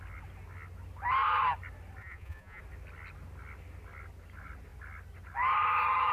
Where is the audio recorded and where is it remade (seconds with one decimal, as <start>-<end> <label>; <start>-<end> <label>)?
0.0-2.0 recorded; 2.0-2.6 remade; 2.6-6.1 recorded